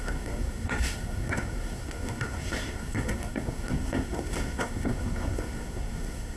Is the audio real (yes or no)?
no